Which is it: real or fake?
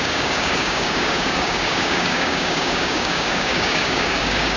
fake